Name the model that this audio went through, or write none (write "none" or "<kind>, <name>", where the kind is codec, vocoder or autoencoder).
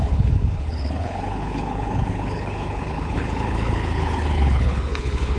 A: codec, HILCodec